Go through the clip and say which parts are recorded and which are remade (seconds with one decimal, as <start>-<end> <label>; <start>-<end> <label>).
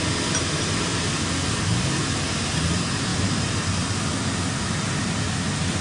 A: 0.0-5.8 recorded